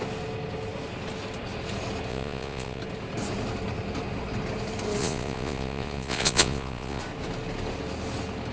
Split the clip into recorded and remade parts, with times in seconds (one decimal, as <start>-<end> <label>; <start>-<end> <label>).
0.0-2.1 recorded; 2.1-2.8 remade; 2.8-5.0 recorded; 5.0-7.0 remade; 7.0-8.5 recorded